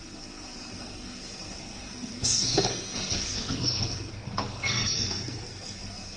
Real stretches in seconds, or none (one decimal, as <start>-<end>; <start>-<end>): none